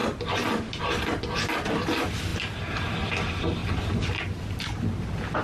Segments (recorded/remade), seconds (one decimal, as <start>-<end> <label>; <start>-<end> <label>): 0.0-5.4 recorded